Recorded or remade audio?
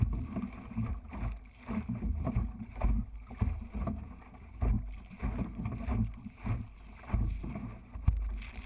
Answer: recorded